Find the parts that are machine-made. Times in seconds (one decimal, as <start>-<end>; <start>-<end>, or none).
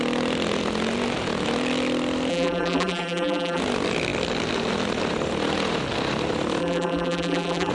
2.3-3.6; 6.6-7.7